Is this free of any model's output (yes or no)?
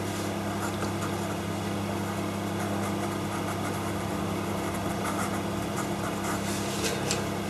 yes